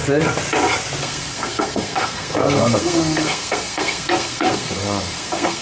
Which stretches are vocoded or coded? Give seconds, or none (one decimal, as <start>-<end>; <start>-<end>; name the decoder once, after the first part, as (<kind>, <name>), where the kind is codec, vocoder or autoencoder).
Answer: 1.0-5.6 (codec, SNAC)